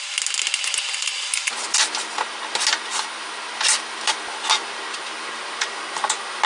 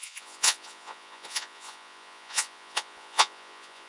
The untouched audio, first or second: first